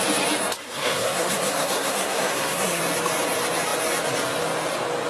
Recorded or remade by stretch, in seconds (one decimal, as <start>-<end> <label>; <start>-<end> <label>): 0.0-0.6 recorded; 0.6-2.8 remade; 2.8-5.1 recorded